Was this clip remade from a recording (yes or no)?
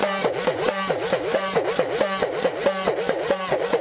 yes